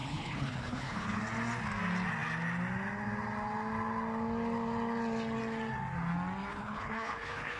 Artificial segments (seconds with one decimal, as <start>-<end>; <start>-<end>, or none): 0.0-1.2; 6.5-7.6